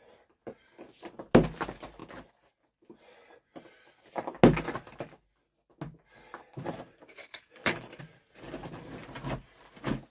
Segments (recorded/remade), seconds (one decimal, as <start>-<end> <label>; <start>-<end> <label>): 0.0-7.2 recorded; 7.2-8.0 remade; 8.0-10.1 recorded

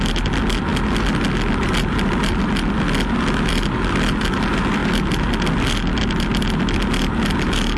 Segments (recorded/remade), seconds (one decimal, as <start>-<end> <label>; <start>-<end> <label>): 0.0-7.8 recorded